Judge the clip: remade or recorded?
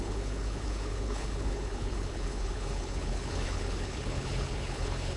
remade